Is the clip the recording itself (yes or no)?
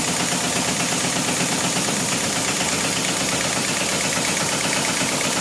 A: yes